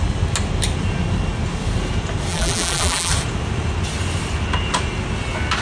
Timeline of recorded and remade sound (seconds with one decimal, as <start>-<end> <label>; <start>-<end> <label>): 0.0-2.3 recorded; 2.3-3.1 remade; 3.1-5.6 recorded

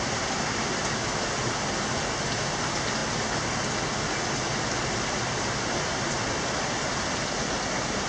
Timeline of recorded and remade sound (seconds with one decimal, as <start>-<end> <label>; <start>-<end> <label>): 0.0-8.1 recorded

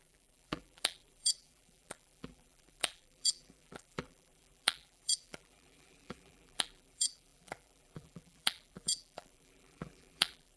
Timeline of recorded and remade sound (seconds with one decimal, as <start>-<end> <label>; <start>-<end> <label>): 0.0-10.6 remade

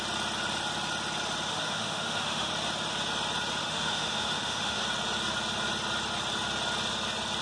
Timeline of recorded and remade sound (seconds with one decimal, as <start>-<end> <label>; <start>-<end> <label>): 0.0-1.5 recorded; 1.5-2.5 remade; 2.5-3.6 recorded; 3.6-4.8 remade; 4.8-7.4 recorded

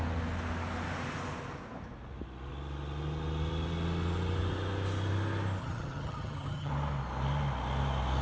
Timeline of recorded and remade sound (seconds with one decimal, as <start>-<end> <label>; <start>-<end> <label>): 0.0-5.6 recorded; 5.6-6.7 remade; 6.7-8.2 recorded

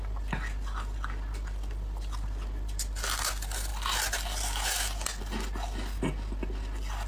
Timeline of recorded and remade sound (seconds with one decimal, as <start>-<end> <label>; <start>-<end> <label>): 0.0-7.1 recorded

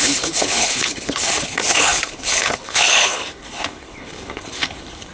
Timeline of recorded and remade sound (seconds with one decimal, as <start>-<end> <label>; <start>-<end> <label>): 0.0-5.1 remade